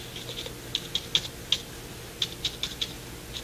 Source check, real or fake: real